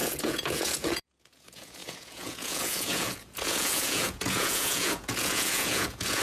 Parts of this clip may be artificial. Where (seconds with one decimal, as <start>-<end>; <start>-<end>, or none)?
0.0-6.2